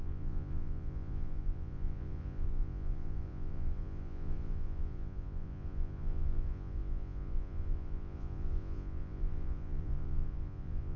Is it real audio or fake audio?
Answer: fake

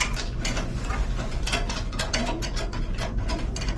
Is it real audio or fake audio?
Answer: fake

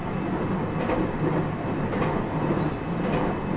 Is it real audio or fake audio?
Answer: real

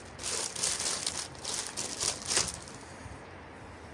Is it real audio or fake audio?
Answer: real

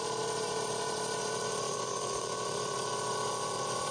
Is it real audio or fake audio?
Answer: fake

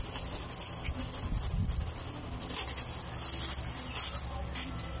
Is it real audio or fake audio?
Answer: real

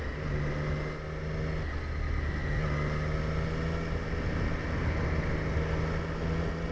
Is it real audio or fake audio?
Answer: real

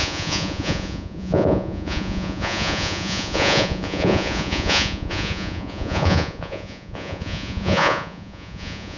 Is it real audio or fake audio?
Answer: fake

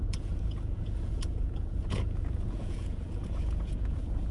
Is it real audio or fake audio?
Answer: fake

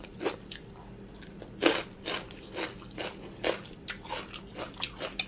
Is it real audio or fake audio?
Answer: real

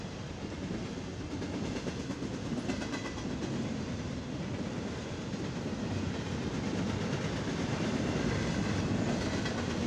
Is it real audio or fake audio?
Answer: real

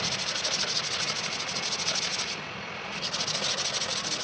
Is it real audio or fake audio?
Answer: real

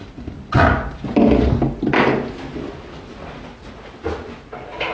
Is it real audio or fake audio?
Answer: real